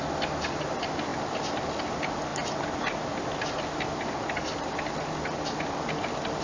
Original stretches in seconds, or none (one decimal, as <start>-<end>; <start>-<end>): 0.0-6.4